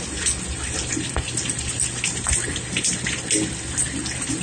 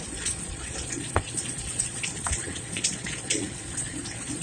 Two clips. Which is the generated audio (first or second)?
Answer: second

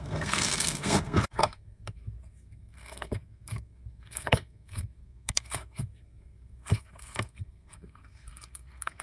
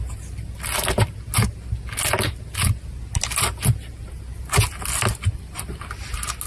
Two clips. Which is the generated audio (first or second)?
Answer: first